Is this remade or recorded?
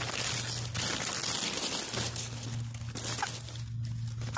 recorded